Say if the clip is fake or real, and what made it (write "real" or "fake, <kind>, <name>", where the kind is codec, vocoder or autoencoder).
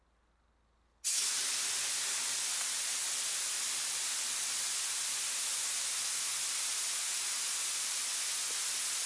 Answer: real